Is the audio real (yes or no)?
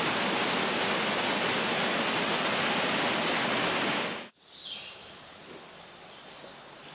yes